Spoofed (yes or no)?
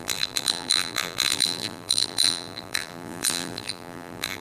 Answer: yes